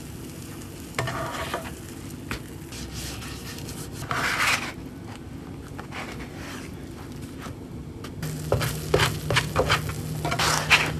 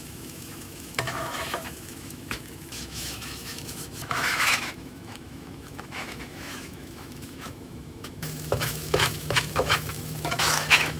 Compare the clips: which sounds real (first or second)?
first